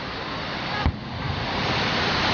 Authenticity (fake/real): real